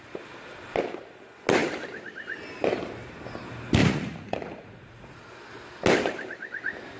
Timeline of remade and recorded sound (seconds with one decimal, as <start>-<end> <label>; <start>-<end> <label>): 0.0-3.8 recorded; 3.8-5.3 remade; 5.3-7.0 recorded